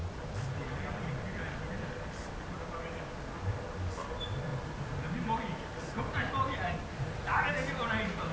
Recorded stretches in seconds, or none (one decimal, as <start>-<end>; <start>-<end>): 0.0-8.3